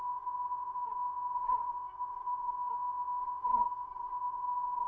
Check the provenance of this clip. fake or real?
fake